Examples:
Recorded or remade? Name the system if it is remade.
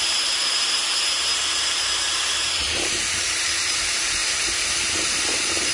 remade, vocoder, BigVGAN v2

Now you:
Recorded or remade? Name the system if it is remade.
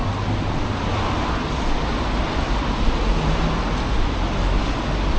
recorded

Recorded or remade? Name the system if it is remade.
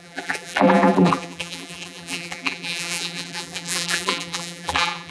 remade, vocoder, BigVGAN v2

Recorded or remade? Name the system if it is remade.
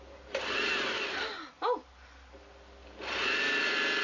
recorded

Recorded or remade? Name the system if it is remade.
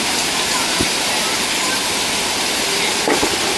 recorded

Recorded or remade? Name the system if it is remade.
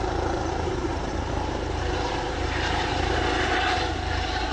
remade, vocoder, BigVGAN v2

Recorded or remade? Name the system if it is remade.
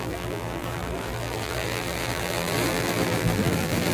remade, vocoder, BigVGAN v2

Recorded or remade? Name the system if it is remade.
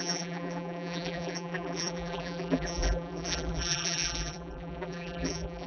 remade, vocoder, BigVGAN v2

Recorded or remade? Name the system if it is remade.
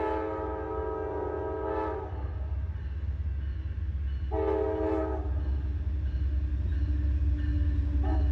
recorded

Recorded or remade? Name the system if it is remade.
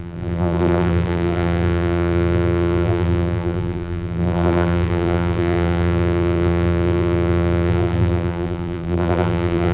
remade, vocoder, BigVGAN v2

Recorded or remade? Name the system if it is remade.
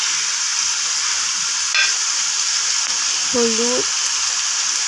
recorded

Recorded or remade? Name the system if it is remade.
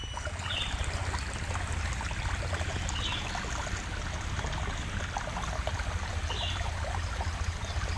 recorded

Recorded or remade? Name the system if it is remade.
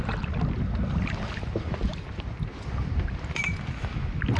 remade, vocoder, BigVGAN v2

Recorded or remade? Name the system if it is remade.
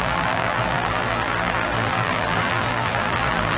remade, vocoder, BigVGAN v2